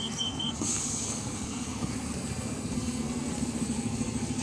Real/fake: fake